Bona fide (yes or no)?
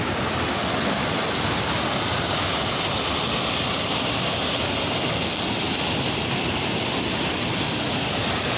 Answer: yes